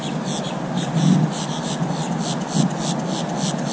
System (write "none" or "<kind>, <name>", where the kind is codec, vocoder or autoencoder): none